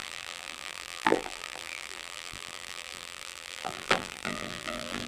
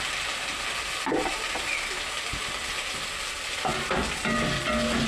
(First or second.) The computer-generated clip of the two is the first